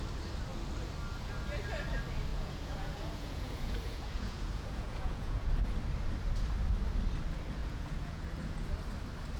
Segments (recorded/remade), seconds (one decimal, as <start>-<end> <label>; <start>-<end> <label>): 0.0-2.3 recorded; 2.3-5.5 remade; 5.5-7.6 recorded; 7.6-8.7 remade; 8.7-9.4 recorded